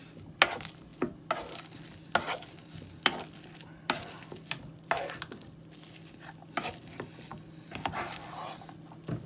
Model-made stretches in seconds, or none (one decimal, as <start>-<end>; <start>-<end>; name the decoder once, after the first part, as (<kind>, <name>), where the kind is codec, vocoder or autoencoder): none